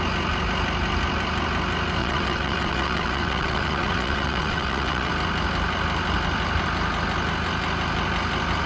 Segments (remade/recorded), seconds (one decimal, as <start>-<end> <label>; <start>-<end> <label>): 0.0-2.0 recorded; 2.0-5.1 remade; 5.1-8.7 recorded